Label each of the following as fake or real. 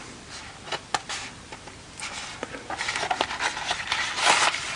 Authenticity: real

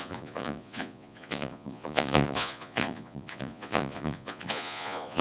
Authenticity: fake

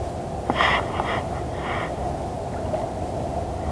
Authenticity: real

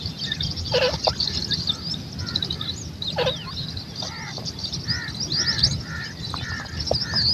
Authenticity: real